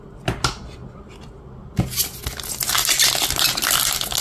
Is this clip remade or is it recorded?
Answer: recorded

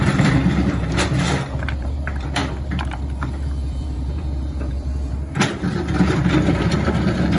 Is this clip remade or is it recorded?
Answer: remade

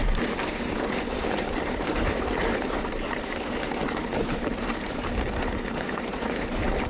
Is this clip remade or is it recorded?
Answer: remade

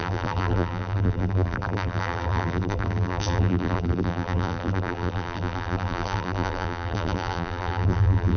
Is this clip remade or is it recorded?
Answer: remade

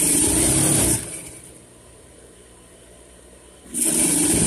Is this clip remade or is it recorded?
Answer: remade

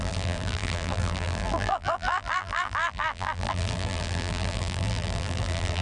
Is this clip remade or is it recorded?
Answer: remade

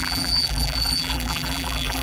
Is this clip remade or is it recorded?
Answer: remade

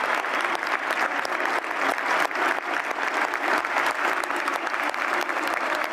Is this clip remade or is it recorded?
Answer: recorded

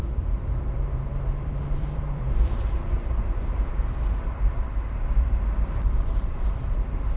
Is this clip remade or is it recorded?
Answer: remade